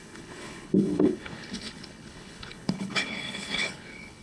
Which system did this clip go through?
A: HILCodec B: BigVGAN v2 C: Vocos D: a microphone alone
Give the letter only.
A